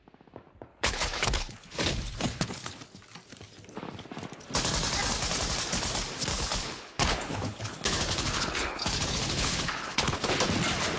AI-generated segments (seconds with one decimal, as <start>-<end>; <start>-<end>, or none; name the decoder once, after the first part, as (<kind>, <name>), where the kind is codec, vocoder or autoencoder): 0.7-2.8 (codec, HILCodec); 6.3-10.3